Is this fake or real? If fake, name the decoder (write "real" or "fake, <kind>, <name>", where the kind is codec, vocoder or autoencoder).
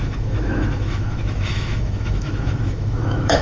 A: fake, autoencoder, DAC-VAE